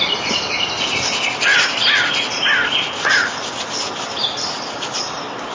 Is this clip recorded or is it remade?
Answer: recorded